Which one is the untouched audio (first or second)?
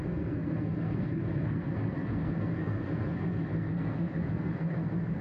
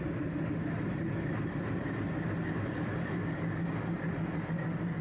second